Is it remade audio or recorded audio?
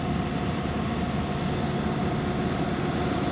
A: recorded